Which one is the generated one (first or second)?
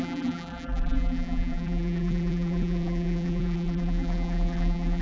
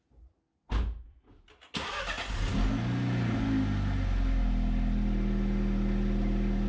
first